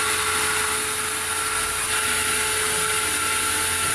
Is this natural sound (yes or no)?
yes